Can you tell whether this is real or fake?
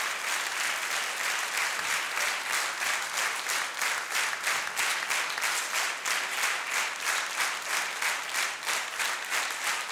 real